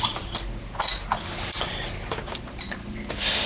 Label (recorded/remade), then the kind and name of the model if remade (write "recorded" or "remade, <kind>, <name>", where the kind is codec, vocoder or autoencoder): recorded